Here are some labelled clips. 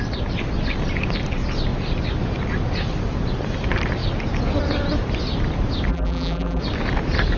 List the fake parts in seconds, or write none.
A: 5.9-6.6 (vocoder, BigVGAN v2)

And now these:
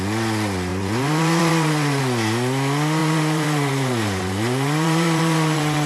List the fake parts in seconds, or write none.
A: 0.7-2.0 (vocoder, BigVGAN v2); 3.0-5.9

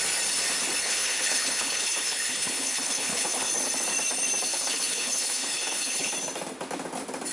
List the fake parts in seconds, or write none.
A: 0.8-3.5 (codec, HILCodec); 4.5-6.1

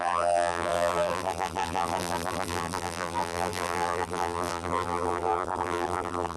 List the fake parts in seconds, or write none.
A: 0.0-6.4 (vocoder, BigVGAN v2)

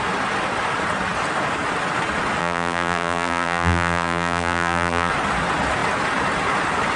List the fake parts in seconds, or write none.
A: 2.4-5.1 (vocoder, BigVGAN v2)

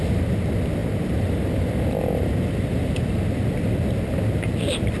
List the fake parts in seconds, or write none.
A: none